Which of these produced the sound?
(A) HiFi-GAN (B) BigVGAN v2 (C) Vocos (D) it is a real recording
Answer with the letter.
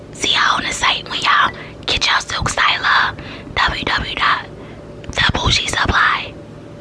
D